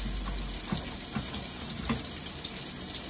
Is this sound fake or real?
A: real